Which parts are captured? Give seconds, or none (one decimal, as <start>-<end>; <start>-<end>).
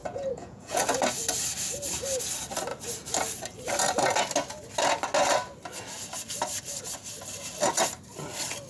0.9-8.7